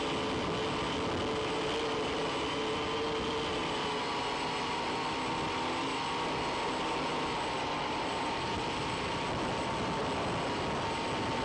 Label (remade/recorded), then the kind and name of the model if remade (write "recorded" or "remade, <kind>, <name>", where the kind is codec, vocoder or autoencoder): recorded